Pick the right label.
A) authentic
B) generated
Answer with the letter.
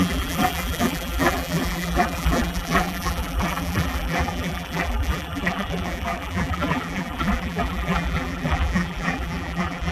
B